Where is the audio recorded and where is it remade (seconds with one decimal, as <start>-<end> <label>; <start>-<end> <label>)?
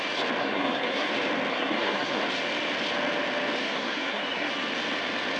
0.0-0.4 recorded; 0.4-1.1 remade; 1.1-1.5 recorded; 1.5-2.2 remade; 2.2-3.6 recorded; 3.6-4.5 remade; 4.5-5.4 recorded